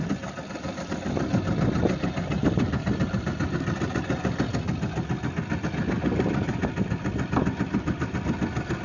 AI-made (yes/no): no